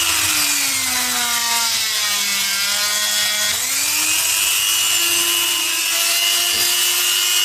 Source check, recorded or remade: recorded